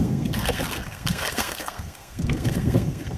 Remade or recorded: remade